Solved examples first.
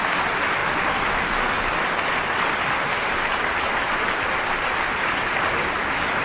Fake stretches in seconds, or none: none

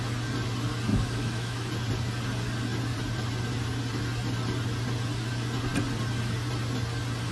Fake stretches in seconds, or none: 0.9-1.7 (autoencoder, DAC-VAE)

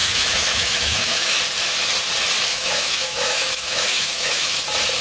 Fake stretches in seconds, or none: 0.0-1.4 (autoencoder, DAC-VAE); 2.5-4.6